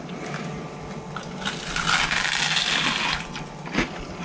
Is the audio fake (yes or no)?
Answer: no